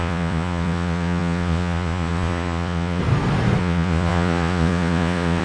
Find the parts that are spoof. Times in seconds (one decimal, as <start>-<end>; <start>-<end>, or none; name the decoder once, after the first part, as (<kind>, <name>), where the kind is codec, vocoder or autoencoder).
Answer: 0.0-3.0 (vocoder, Vocos); 3.6-5.4